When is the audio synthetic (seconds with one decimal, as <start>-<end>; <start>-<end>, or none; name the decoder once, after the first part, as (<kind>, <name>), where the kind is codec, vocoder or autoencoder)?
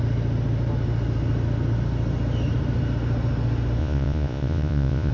3.8-5.1 (vocoder, Vocos)